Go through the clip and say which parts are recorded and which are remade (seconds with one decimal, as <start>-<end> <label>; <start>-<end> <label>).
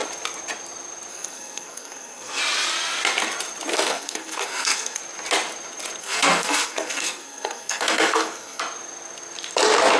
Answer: 0.0-1.1 recorded; 1.1-2.4 remade; 2.4-3.7 recorded; 3.7-5.0 remade; 5.0-6.0 recorded; 6.0-8.6 remade; 8.6-10.0 recorded